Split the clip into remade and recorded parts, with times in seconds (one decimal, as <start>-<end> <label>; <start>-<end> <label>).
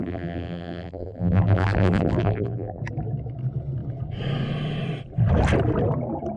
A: 0.0-2.8 remade; 2.8-6.4 recorded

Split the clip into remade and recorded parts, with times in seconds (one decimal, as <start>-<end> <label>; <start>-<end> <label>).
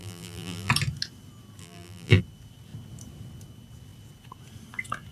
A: 0.0-0.7 remade; 0.7-1.6 recorded; 1.6-2.2 remade; 2.2-5.1 recorded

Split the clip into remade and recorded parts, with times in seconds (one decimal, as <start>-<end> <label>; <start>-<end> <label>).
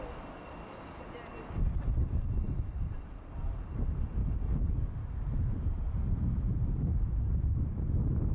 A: 0.0-4.2 recorded; 4.2-7.0 remade; 7.0-8.3 recorded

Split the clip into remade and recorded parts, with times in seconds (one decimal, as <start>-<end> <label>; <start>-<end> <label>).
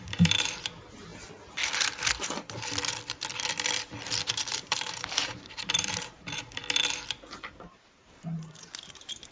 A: 0.0-1.1 remade; 1.1-4.5 recorded; 4.5-6.6 remade; 6.6-7.5 recorded; 7.5-9.3 remade